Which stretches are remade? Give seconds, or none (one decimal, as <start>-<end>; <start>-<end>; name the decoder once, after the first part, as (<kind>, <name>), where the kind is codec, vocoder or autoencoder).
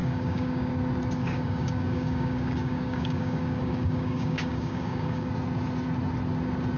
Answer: 0.0-0.7 (codec, DAC); 1.2-5.3